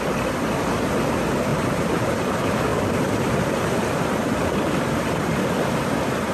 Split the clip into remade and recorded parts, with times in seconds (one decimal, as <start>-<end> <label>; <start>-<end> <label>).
0.0-1.5 recorded; 1.5-2.3 remade; 2.3-2.7 recorded; 2.7-3.8 remade; 3.8-6.3 recorded